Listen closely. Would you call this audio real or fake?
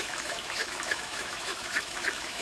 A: fake